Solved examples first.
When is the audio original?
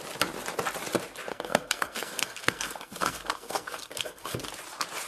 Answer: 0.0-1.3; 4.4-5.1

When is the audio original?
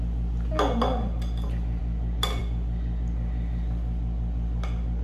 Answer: 0.0-5.0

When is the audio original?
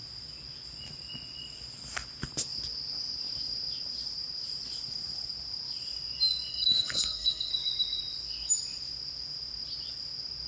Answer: 0.0-6.5; 7.5-10.5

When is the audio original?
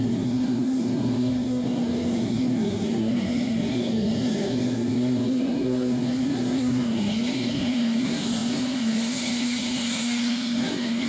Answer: none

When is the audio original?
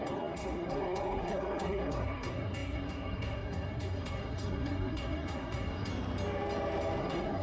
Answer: 5.9-7.0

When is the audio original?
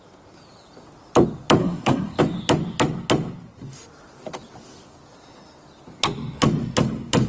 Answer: 0.0-1.6; 2.2-7.3